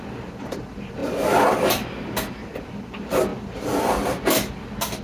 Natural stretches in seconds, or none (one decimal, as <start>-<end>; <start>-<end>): 0.0-5.0